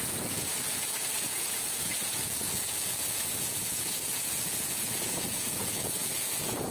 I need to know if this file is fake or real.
fake